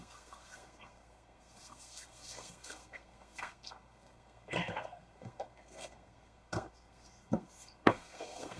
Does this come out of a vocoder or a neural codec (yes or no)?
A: yes